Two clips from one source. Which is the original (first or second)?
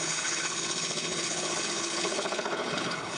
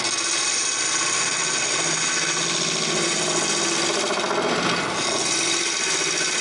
second